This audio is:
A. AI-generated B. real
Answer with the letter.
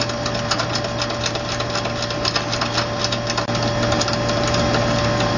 B